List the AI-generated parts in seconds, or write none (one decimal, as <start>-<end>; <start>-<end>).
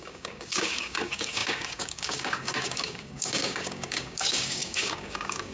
0.0-5.5